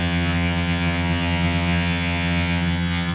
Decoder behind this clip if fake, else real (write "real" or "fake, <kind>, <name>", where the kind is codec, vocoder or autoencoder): fake, vocoder, HiFi-GAN